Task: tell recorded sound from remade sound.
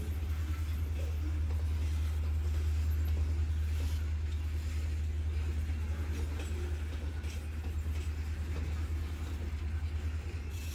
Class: recorded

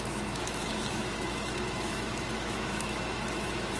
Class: remade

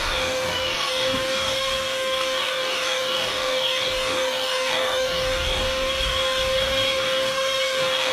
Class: remade